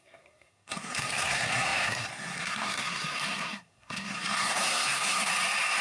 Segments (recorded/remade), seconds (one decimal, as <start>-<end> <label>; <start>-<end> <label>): 0.0-5.3 remade; 5.3-5.8 recorded